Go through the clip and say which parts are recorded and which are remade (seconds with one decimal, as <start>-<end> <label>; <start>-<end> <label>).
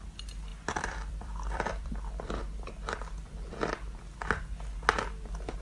0.0-0.5 recorded; 0.5-3.5 remade; 3.5-5.6 recorded